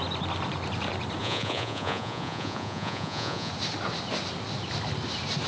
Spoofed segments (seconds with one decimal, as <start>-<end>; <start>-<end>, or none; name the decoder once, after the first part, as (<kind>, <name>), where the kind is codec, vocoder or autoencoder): 1.2-3.5 (vocoder, Vocos)